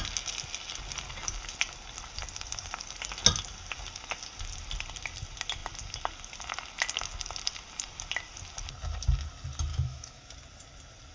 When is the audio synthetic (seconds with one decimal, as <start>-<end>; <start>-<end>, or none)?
9.7-10.3